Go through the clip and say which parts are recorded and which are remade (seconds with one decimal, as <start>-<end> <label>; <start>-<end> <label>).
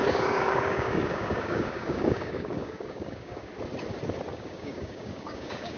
0.0-3.5 remade; 3.5-4.3 recorded; 4.3-5.8 remade